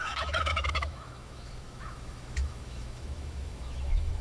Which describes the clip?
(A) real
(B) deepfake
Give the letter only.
B